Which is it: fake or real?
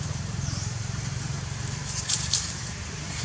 fake